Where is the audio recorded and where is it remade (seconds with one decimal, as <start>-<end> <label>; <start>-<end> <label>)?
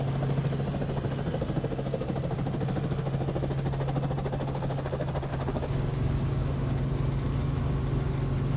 0.0-5.3 recorded; 5.3-6.8 remade; 6.8-8.6 recorded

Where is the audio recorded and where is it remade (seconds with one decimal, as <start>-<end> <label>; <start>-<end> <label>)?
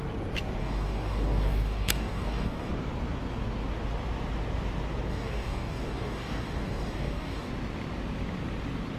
0.0-0.6 recorded; 0.6-2.7 remade; 2.7-5.1 recorded; 5.1-7.5 remade; 7.5-9.0 recorded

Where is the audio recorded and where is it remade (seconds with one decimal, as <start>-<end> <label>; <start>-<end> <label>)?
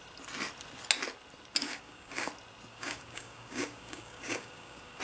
0.0-1.6 recorded; 1.6-2.3 remade; 2.3-2.7 recorded; 2.7-5.0 remade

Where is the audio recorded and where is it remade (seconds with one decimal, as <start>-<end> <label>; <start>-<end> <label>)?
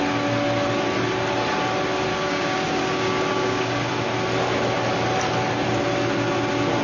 0.0-2.1 recorded; 2.1-3.9 remade; 3.9-6.8 recorded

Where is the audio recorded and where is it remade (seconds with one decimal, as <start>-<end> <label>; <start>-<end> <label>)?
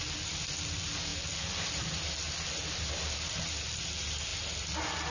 0.0-5.1 recorded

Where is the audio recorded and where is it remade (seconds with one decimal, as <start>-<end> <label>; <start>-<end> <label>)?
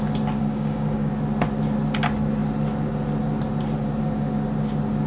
0.0-0.4 recorded; 0.4-1.1 remade; 1.1-5.1 recorded